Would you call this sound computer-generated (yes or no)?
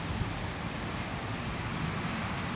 no